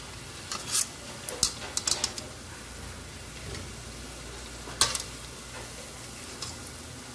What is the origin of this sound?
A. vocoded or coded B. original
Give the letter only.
B